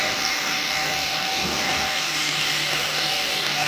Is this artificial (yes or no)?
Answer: yes